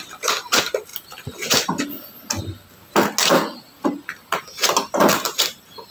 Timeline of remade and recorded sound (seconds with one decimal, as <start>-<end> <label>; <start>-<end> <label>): 0.0-5.9 recorded